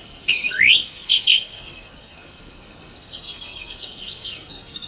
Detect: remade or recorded remade